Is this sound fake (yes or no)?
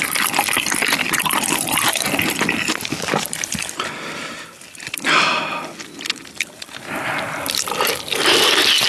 yes